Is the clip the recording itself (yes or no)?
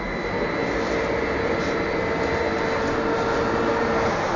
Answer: yes